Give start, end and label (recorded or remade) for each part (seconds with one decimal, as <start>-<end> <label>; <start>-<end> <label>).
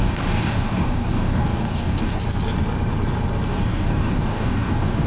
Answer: 0.0-2.2 remade; 2.2-3.5 recorded; 3.5-5.1 remade